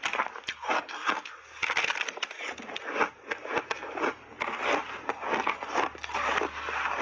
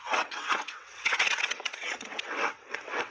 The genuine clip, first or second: first